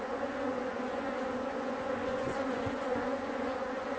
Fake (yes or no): yes